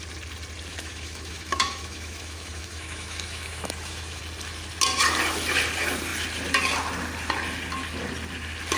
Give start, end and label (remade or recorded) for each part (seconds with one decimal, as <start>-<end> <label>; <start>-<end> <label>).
0.0-0.7 recorded; 0.7-4.2 remade; 4.2-8.8 recorded